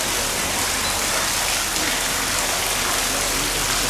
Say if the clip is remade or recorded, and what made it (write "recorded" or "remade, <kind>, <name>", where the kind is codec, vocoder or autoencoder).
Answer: recorded